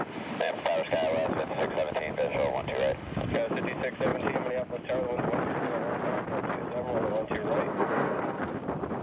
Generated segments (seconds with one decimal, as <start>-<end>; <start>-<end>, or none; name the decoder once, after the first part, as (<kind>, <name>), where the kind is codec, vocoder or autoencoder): 7.7-8.4 (codec, SNAC)